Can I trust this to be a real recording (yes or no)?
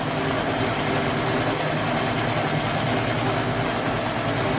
yes